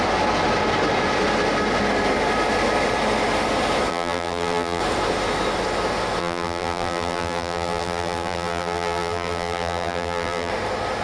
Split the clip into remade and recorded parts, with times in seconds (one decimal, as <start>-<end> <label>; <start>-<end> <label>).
0.0-3.9 recorded; 3.9-4.8 remade; 4.8-6.2 recorded; 6.2-10.5 remade; 10.5-11.0 recorded

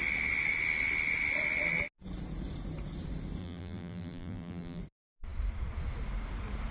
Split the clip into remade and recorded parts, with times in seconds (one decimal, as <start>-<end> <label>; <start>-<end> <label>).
0.0-3.4 recorded; 3.4-4.8 remade; 4.8-6.7 recorded